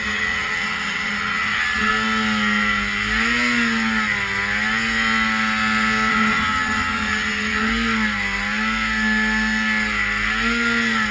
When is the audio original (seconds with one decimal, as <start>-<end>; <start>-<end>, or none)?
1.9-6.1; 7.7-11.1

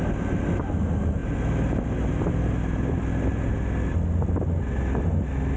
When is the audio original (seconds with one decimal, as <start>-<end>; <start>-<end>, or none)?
0.0-5.6

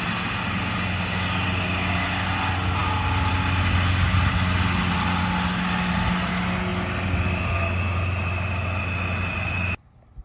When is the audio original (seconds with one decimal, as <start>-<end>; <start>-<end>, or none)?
0.0-10.2

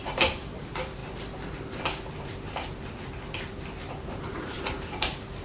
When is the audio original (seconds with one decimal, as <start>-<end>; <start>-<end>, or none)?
1.0-4.2

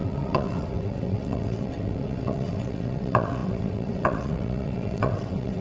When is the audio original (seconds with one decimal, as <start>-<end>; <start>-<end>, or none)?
none

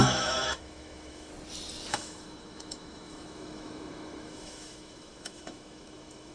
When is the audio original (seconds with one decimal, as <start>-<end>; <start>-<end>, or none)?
1.3-1.9